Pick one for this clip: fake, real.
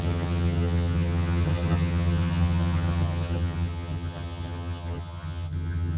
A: fake